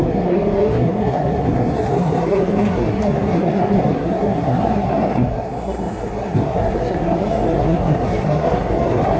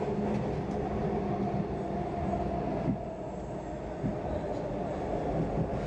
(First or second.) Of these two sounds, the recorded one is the second